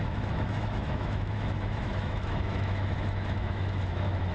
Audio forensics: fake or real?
fake